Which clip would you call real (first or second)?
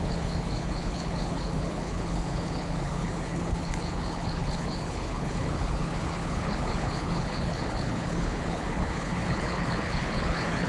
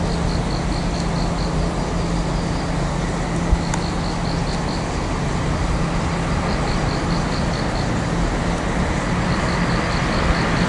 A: second